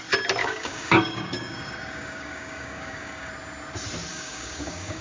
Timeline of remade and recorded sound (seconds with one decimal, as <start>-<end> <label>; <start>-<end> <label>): 0.0-0.4 recorded; 0.4-3.3 remade; 3.3-4.1 recorded; 4.1-5.0 remade